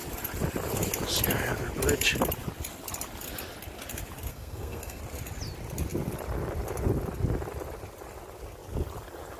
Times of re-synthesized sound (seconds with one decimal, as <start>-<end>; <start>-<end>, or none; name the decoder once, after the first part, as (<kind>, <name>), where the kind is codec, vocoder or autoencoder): 4.3-5.0 (codec, SNAC)